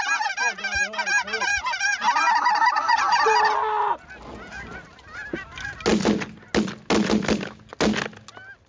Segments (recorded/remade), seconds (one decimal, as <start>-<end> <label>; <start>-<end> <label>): 0.0-1.5 recorded; 1.5-3.0 remade; 3.0-8.7 recorded